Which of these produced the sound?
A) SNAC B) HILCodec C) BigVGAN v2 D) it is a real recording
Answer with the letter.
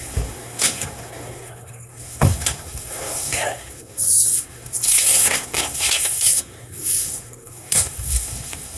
A